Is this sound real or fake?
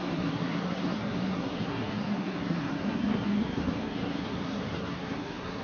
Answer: fake